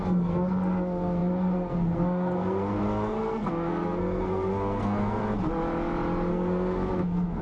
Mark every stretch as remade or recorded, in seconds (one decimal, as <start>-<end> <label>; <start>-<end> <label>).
0.0-5.2 remade; 5.2-6.3 recorded; 6.3-7.4 remade